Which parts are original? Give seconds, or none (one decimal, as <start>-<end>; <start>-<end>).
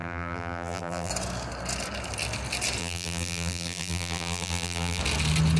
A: 1.1-2.8; 5.0-5.6